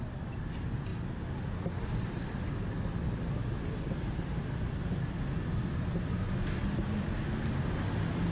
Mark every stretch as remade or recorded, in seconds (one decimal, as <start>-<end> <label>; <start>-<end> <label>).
0.0-8.3 recorded